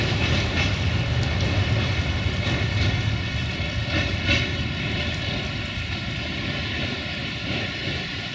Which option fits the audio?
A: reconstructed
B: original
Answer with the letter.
B